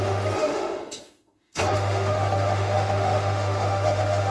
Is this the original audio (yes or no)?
no